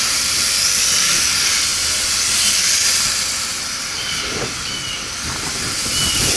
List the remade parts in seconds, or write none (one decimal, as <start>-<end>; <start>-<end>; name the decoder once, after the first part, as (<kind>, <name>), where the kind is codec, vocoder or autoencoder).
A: none